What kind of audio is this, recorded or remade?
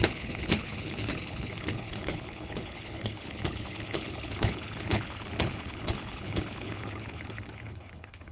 remade